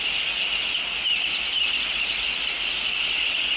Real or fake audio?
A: real